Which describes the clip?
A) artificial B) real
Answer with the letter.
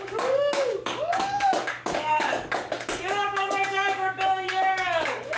A